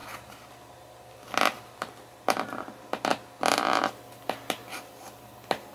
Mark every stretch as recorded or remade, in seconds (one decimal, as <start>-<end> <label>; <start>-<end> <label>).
0.0-5.7 recorded